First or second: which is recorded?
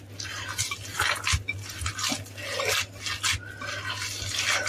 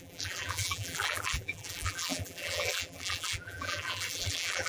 first